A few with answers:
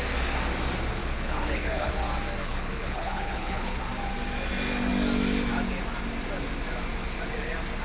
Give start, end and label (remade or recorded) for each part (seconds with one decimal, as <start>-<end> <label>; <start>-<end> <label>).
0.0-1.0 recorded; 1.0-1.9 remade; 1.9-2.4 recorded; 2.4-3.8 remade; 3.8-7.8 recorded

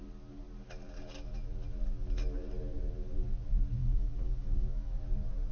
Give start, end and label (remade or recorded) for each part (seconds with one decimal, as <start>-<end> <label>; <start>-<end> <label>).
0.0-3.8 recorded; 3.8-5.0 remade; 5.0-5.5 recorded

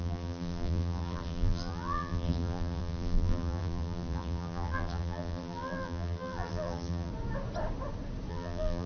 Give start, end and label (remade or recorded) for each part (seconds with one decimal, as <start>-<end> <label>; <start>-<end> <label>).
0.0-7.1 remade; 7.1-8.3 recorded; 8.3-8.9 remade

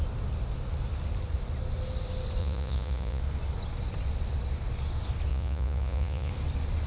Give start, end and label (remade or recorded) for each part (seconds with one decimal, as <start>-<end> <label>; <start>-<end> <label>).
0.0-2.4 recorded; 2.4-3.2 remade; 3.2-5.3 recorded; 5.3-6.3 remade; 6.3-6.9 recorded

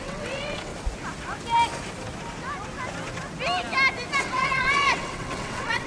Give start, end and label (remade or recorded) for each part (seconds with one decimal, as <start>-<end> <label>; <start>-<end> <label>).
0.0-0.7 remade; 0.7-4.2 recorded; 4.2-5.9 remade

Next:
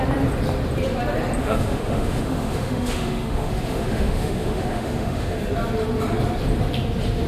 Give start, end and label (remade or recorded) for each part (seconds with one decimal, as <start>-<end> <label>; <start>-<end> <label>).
0.0-1.4 recorded; 1.4-5.4 remade; 5.4-7.3 recorded

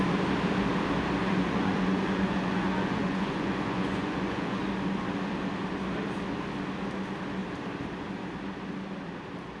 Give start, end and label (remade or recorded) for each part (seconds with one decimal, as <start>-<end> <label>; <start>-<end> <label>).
0.0-1.2 recorded; 1.2-4.6 remade; 4.6-9.6 recorded